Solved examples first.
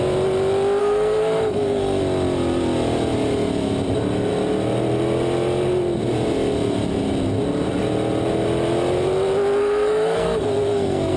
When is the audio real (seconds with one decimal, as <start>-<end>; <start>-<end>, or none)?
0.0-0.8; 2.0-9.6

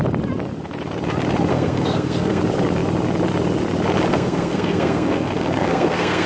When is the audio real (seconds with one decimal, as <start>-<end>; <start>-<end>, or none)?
0.0-1.5; 2.4-4.1

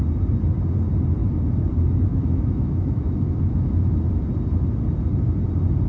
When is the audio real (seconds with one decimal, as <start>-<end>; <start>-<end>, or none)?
0.0-1.2; 1.7-2.1; 4.1-5.9